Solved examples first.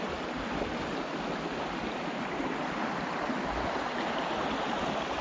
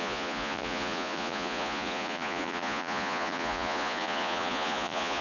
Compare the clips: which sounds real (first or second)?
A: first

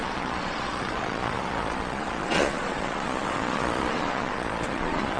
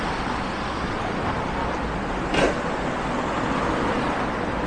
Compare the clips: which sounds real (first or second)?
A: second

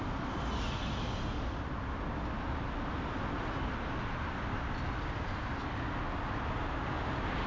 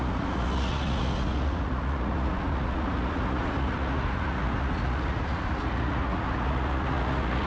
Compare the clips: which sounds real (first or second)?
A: first